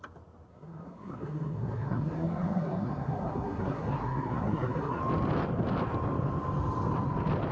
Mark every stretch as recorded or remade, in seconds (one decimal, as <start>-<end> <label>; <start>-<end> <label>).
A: 0.0-0.5 recorded; 0.5-5.0 remade; 5.0-7.5 recorded